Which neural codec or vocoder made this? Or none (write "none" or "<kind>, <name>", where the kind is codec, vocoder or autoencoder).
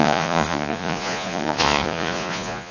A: vocoder, Vocos